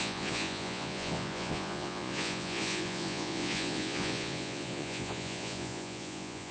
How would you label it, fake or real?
fake